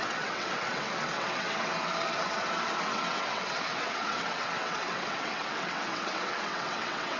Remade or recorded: remade